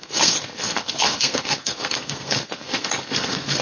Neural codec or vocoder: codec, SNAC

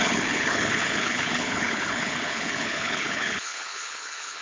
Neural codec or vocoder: codec, HILCodec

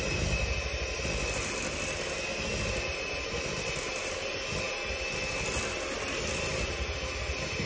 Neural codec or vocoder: none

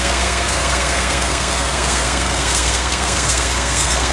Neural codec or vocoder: codec, SNAC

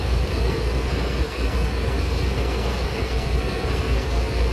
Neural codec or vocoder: codec, SNAC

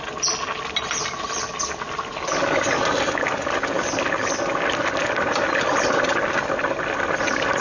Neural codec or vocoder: none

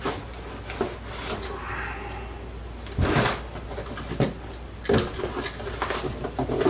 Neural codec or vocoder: none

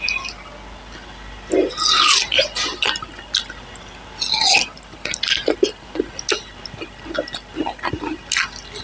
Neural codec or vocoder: none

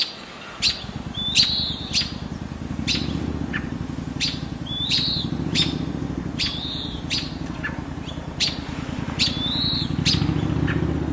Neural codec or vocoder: none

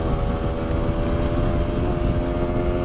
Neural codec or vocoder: none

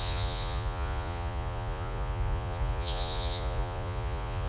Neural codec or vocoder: vocoder, Vocos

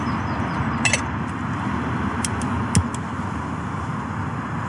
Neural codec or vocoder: none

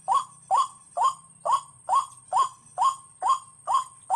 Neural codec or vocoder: none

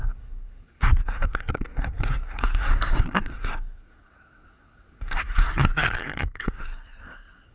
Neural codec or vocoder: codec, SNAC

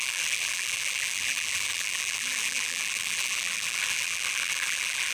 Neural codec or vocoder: vocoder, BigVGAN v2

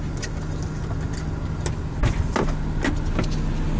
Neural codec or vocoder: none